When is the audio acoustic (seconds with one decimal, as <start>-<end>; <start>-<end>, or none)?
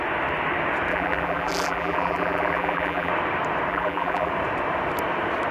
0.0-0.9; 3.1-3.7; 4.3-5.5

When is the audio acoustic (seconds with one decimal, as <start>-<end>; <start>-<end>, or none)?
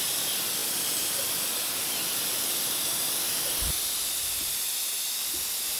0.0-5.8